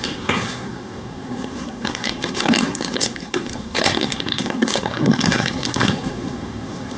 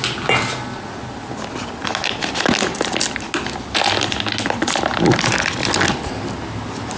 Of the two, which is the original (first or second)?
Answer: second